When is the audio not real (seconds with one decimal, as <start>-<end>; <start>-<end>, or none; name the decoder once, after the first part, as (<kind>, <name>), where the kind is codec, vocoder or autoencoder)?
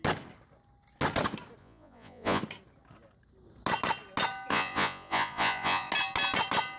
1.6-2.4 (vocoder, Vocos); 4.5-5.9